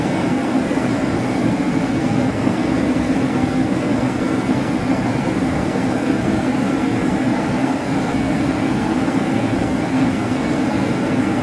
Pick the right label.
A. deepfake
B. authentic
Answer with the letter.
A